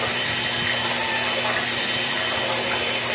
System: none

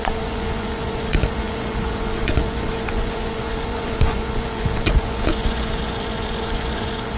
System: vocoder, Vocos